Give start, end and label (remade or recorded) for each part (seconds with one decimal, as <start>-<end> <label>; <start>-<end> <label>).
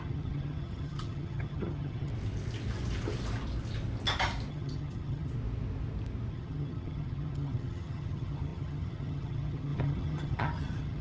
0.0-2.1 remade; 2.1-4.5 recorded; 4.5-5.3 remade; 5.3-6.3 recorded; 6.3-11.0 remade